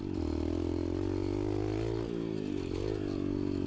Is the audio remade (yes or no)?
no